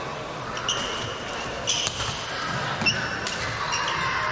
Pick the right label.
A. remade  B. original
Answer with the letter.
B